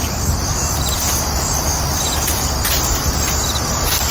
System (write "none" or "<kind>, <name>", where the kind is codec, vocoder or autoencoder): none